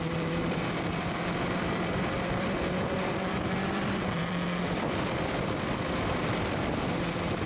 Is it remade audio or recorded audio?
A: remade